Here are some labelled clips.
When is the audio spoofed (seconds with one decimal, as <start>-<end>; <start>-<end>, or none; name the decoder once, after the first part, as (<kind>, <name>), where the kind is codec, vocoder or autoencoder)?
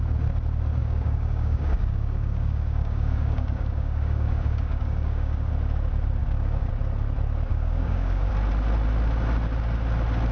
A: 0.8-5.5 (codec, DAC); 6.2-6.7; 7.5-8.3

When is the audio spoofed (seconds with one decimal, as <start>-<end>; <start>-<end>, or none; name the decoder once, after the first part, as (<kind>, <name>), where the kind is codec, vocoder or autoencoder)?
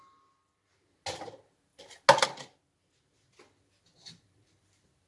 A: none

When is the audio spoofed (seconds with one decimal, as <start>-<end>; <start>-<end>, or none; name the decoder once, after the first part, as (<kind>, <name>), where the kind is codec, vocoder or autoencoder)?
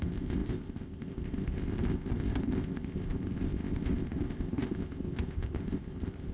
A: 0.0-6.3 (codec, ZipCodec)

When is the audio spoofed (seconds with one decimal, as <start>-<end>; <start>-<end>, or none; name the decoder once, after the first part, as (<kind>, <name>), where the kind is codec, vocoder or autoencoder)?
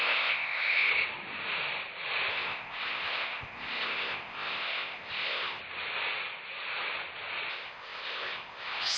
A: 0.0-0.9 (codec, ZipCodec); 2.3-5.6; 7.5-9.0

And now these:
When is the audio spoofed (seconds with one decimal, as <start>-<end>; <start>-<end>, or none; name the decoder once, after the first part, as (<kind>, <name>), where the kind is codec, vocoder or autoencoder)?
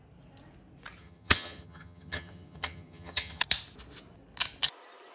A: 1.0-3.4 (vocoder, HiFi-GAN)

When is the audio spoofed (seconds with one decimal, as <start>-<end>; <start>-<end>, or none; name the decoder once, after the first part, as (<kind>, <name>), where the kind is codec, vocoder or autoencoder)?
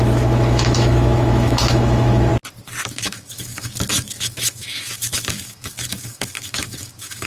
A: 0.0-2.3 (autoencoder, DAC-VAE); 2.8-7.3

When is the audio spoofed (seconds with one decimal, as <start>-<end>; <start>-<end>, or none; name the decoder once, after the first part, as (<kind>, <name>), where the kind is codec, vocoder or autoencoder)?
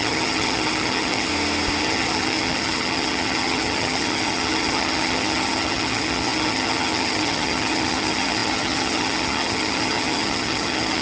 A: 0.0-1.3 (vocoder, HiFi-GAN); 1.8-11.0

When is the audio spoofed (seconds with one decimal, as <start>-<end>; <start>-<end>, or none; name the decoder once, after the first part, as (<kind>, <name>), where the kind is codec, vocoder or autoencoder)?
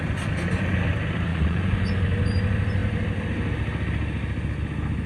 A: 1.3-1.9 (vocoder, Vocos)